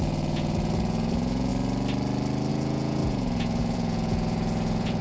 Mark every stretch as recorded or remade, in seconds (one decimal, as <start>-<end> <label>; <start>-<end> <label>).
0.0-1.5 remade; 1.5-2.5 recorded; 2.5-5.0 remade